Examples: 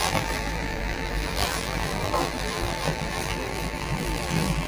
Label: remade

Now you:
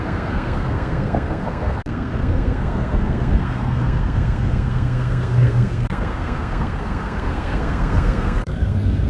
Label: remade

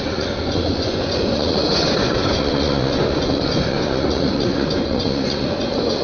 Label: remade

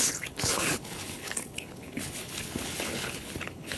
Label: remade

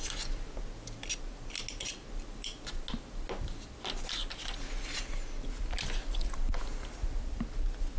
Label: recorded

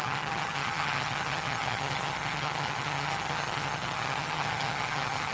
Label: remade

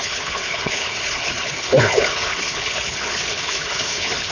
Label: remade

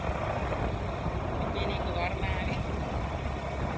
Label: recorded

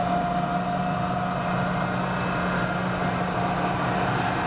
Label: recorded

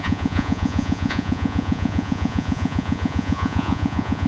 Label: remade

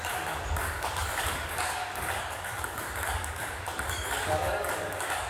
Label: remade